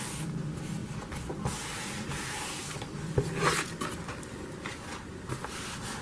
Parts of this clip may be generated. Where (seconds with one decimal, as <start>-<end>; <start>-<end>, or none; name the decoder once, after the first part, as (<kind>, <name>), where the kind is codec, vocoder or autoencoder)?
none